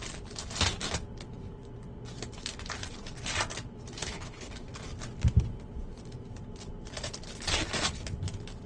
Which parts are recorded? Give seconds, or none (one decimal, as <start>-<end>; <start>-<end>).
0.0-4.0; 4.5-8.7